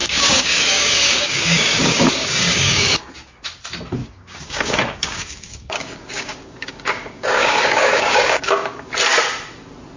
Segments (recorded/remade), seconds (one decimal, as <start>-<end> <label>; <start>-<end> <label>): 0.0-3.1 remade; 3.1-4.0 recorded; 4.0-8.9 remade; 8.9-10.0 recorded